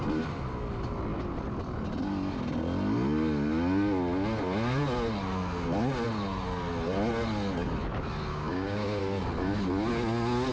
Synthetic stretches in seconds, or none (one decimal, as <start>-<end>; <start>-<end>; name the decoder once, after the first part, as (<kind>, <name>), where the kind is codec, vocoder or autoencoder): 8.3-9.0 (codec, DAC)